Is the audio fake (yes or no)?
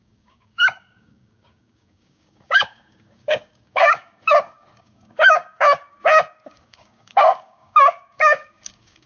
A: yes